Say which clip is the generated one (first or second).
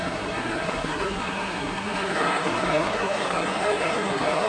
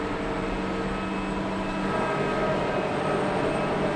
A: first